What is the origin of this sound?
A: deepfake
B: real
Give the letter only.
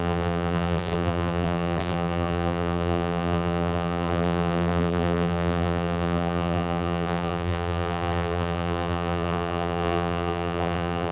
A